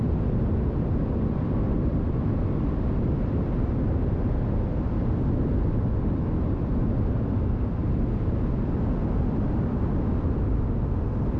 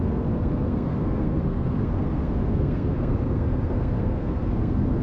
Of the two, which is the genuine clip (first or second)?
first